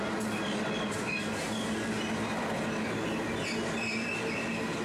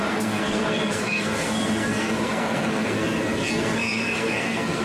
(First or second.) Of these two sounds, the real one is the first